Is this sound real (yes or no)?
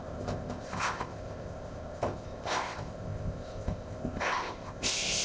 no